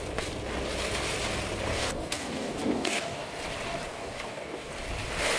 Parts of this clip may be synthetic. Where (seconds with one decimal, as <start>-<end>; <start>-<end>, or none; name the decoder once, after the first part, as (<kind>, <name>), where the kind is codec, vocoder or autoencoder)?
1.7-3.3 (codec, DAC); 3.9-4.7